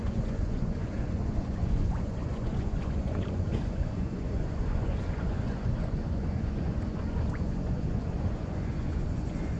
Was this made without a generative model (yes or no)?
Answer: no